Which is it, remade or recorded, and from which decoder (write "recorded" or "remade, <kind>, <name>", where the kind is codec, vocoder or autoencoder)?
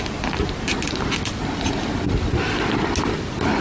recorded